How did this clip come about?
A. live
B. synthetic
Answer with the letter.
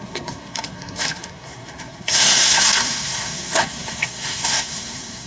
B